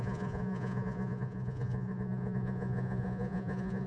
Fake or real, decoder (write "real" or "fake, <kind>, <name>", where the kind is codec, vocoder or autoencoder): fake, vocoder, Vocos